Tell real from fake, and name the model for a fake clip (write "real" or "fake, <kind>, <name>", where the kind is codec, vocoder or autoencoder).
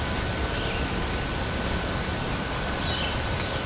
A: real